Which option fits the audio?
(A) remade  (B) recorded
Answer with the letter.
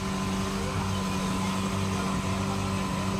B